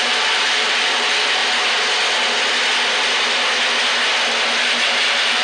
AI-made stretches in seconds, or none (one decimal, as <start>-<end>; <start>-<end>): 0.0-1.4; 4.6-5.4